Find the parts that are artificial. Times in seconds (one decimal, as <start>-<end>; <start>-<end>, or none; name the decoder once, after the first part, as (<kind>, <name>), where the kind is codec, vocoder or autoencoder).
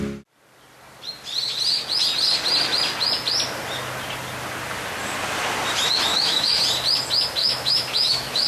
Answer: 6.1-6.6 (autoencoder, DAC-VAE); 7.4-8.5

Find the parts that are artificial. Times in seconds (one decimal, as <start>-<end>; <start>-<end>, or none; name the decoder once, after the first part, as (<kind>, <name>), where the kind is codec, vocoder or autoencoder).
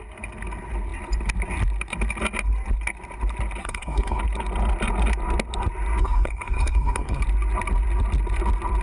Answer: 3.6-4.2 (codec, SNAC); 6.0-7.2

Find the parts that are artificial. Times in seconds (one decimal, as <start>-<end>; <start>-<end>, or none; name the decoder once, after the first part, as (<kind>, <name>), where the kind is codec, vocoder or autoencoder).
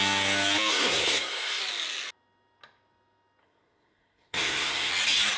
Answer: 0.7-1.6 (codec, SNAC); 3.4-4.9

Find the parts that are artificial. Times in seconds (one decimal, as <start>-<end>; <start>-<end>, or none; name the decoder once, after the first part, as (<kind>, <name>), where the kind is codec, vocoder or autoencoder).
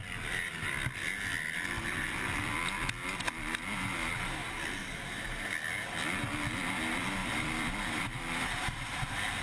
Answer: 0.0-0.7 (vocoder, BigVGAN v2); 4.8-6.3; 7.2-9.4